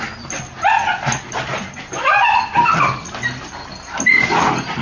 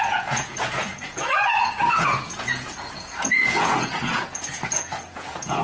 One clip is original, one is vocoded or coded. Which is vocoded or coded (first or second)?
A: second